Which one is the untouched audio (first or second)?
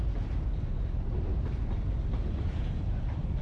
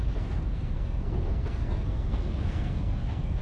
first